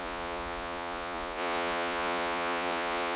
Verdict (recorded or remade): remade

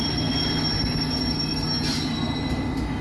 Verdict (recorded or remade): recorded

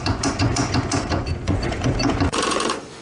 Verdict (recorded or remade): remade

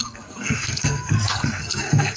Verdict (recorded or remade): remade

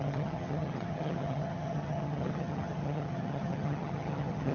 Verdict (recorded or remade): remade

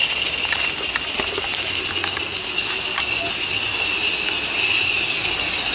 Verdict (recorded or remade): recorded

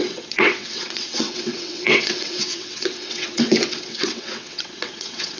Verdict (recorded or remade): remade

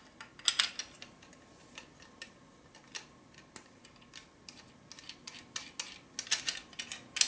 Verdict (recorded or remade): recorded